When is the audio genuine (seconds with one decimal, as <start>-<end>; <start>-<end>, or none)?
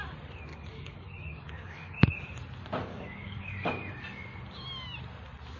0.0-0.5; 2.4-2.9; 3.7-5.6